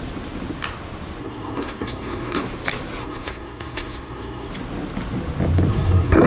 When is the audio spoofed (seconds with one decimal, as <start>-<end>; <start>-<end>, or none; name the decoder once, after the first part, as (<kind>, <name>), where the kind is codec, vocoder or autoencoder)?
1.2-2.4 (codec, SNAC); 3.0-4.5; 5.7-6.3